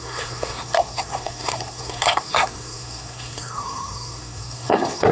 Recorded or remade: remade